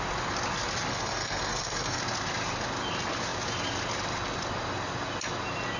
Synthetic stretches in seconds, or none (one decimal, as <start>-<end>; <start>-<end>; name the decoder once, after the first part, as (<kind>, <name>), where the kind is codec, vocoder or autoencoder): 0.9-2.0 (codec, SNAC)